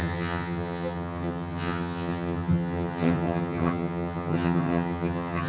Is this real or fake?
fake